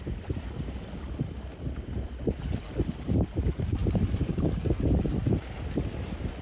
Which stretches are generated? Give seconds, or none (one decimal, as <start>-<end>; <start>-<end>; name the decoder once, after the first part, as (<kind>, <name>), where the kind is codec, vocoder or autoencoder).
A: 3.8-5.1 (vocoder, BigVGAN v2)

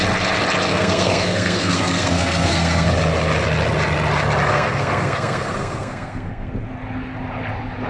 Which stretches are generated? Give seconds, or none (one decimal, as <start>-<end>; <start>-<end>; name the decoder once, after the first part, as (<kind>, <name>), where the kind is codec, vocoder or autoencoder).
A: 0.7-2.9 (codec, SNAC); 4.5-6.5

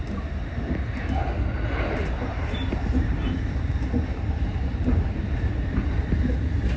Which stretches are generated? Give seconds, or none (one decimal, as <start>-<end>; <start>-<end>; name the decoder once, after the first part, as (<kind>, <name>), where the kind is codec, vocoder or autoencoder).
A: 2.3-6.3 (vocoder, BigVGAN v2)

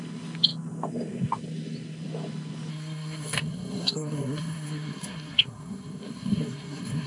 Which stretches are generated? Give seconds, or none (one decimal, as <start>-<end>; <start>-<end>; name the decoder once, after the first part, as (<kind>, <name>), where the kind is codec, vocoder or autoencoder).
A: 2.7-7.1 (codec, SNAC)

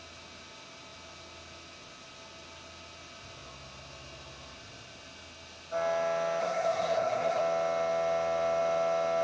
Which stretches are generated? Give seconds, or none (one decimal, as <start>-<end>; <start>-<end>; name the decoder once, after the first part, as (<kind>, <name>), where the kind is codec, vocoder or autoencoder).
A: 6.4-7.4 (codec, SNAC)